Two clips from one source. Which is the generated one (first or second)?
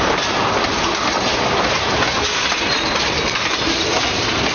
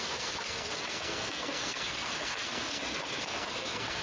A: second